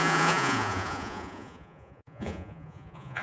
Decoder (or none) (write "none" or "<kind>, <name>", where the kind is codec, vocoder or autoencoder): vocoder, Vocos